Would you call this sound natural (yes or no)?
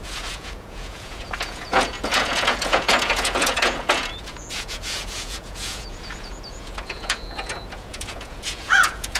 no